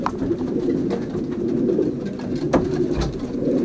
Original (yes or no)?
yes